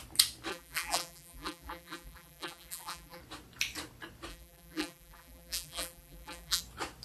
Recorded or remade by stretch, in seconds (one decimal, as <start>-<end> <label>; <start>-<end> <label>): 0.0-0.5 recorded; 0.5-3.2 remade; 3.2-4.3 recorded; 4.3-6.6 remade; 6.6-7.0 recorded